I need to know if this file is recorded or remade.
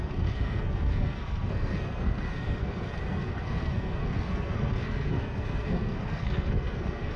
remade